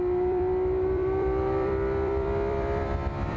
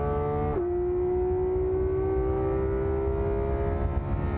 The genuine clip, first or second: second